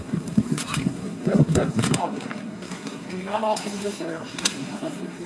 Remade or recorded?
remade